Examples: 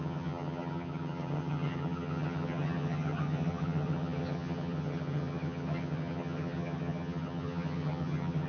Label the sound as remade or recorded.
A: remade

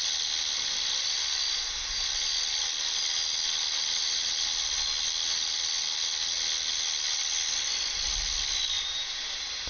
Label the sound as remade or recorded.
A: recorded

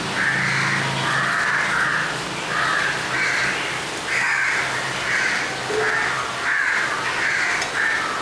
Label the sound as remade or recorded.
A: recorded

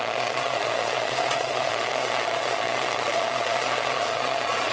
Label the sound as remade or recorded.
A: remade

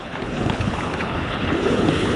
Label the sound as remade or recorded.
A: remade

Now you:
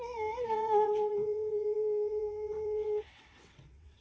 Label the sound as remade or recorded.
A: remade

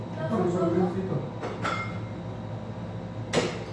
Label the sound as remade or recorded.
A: recorded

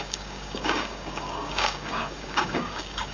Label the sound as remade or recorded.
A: remade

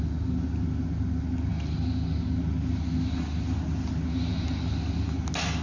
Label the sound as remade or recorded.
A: recorded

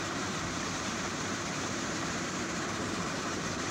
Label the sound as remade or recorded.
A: remade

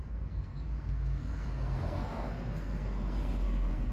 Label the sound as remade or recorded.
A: remade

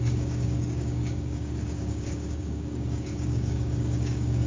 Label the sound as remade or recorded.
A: remade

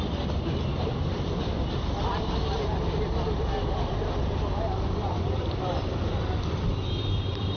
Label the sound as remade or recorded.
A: remade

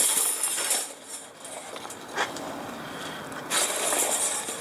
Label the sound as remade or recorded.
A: recorded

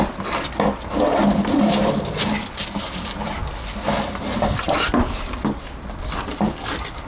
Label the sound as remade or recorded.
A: recorded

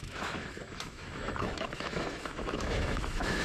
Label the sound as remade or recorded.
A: remade